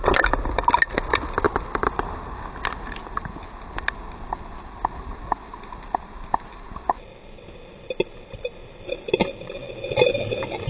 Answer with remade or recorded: recorded